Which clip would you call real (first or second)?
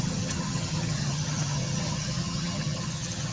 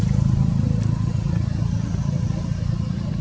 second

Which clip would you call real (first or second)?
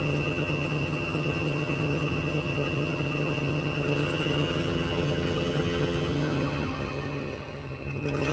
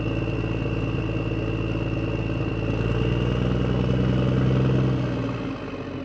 second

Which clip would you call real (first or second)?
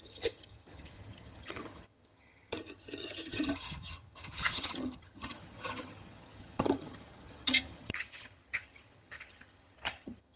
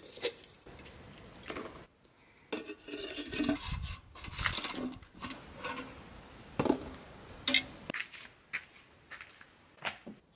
second